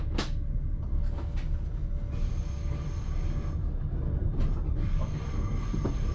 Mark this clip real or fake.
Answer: real